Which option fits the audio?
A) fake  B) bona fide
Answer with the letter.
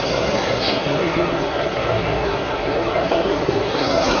A